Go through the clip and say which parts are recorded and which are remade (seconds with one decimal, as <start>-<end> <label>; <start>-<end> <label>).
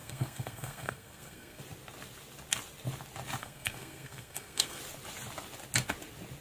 0.0-1.6 remade; 1.6-3.4 recorded; 3.4-4.8 remade; 4.8-6.4 recorded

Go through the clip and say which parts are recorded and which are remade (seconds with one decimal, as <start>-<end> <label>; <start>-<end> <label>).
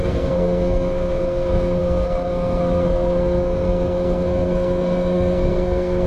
0.0-6.1 remade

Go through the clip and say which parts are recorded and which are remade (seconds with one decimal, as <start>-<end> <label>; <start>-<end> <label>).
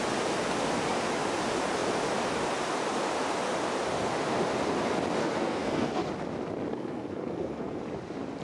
0.0-5.2 recorded; 5.2-6.1 remade; 6.1-6.7 recorded; 6.7-7.8 remade; 7.8-8.4 recorded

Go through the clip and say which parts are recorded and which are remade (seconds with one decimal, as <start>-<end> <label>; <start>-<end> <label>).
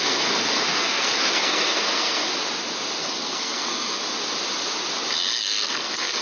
0.0-2.3 remade; 2.3-3.0 recorded; 3.0-4.0 remade; 4.0-5.4 recorded; 5.4-6.2 remade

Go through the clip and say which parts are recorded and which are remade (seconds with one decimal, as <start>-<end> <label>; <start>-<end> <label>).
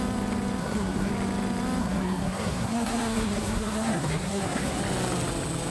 0.0-0.6 recorded; 0.6-1.1 remade; 1.1-1.8 recorded; 1.8-4.8 remade; 4.8-5.7 recorded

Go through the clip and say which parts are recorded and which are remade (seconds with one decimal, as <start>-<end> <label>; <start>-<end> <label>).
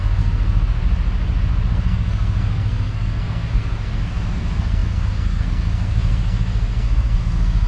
0.0-0.8 remade; 0.8-1.7 recorded; 1.7-7.7 remade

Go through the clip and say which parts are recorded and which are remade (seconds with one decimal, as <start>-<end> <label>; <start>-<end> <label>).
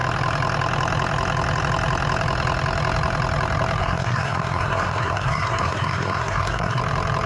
0.0-3.8 recorded; 3.8-6.8 remade; 6.8-7.3 recorded